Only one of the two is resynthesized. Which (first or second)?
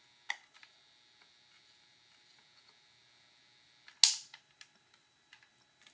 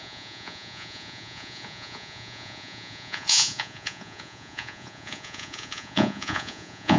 second